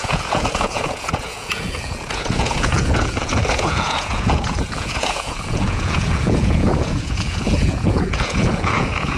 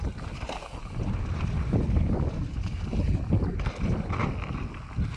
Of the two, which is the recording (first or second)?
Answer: second